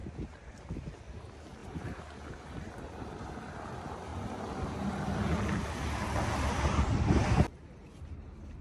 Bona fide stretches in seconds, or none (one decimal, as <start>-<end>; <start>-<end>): 0.0-8.6